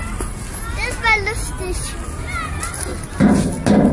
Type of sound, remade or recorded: recorded